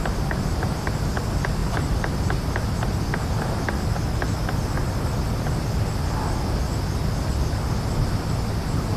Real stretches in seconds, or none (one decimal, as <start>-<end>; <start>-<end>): 0.0-9.0